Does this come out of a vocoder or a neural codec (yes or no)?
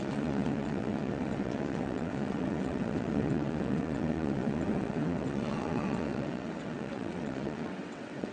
yes